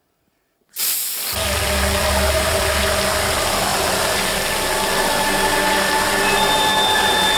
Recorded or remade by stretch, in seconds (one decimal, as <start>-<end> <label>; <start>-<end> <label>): 0.0-7.4 recorded